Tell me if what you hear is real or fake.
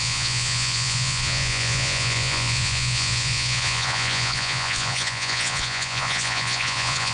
fake